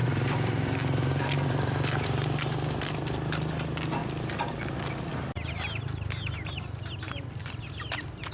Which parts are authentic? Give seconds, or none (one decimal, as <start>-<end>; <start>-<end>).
3.3-4.0; 5.1-8.3